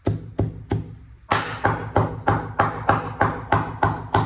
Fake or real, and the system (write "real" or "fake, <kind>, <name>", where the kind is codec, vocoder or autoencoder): real